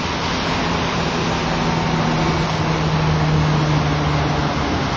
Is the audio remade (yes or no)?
no